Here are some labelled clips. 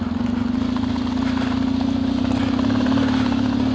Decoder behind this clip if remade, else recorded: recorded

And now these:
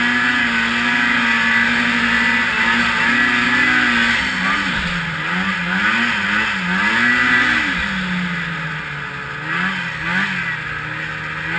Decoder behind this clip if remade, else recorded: recorded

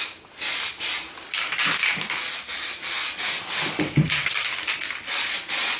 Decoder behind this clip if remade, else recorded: recorded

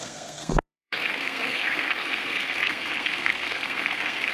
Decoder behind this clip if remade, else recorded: remade, codec, SNAC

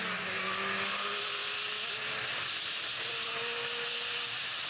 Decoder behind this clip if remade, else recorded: recorded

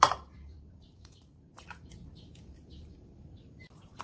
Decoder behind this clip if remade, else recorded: remade, vocoder, BigVGAN v2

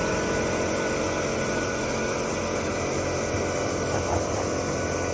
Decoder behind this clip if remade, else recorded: remade, vocoder, BigVGAN v2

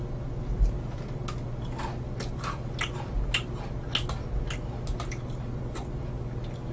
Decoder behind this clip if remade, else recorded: recorded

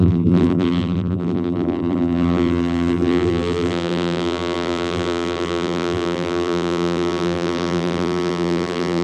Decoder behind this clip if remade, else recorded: remade, vocoder, BigVGAN v2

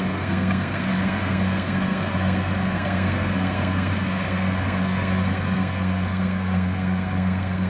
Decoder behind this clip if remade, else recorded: remade, codec, SNAC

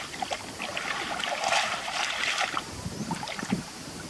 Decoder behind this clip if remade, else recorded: recorded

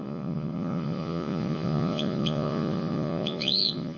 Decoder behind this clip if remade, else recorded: remade, vocoder, Vocos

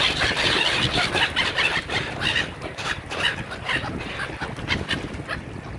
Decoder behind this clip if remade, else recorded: recorded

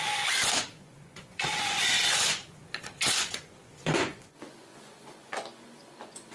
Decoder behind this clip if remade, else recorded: remade, vocoder, Vocos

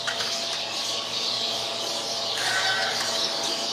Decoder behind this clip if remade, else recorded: remade, codec, DAC